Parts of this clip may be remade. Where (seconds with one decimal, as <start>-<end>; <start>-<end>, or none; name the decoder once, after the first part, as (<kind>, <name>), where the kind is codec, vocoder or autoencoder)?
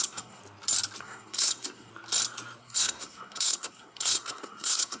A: 0.0-0.4 (codec, SNAC); 1.0-1.9; 2.6-5.0